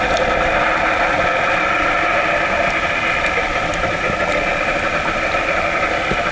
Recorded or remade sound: recorded